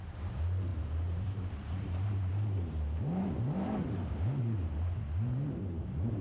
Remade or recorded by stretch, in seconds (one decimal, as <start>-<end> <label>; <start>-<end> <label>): 0.0-6.2 remade

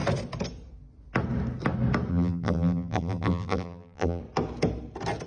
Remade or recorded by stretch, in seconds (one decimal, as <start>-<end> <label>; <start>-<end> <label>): 0.0-2.1 recorded; 2.1-4.2 remade; 4.2-5.3 recorded

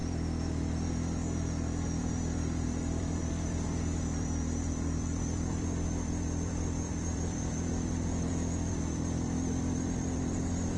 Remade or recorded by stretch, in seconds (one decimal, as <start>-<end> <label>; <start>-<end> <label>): 0.0-2.0 recorded; 2.0-10.8 remade